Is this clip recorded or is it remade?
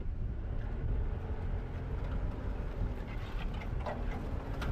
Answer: recorded